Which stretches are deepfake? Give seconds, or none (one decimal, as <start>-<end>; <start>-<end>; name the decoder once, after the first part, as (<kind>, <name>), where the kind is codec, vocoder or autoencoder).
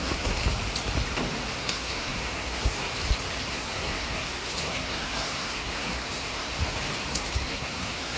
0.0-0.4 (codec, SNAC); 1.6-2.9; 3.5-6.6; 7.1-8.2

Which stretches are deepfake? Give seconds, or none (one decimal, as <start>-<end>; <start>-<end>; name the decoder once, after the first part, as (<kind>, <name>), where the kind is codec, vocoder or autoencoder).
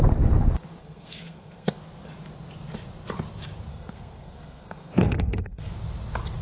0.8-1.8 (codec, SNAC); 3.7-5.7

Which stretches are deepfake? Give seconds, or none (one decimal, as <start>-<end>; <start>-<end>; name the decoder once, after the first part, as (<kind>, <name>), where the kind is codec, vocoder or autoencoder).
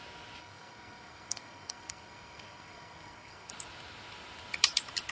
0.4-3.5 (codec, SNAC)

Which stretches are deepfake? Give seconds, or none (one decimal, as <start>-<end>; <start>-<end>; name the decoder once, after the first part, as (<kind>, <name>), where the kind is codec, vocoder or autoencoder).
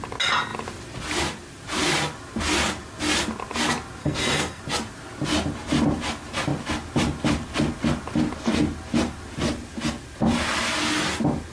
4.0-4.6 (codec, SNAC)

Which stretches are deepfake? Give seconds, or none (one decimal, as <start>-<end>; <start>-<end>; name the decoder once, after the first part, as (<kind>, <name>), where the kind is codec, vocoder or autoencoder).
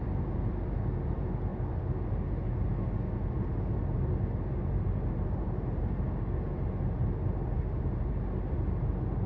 none